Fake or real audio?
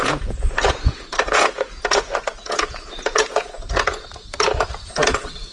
fake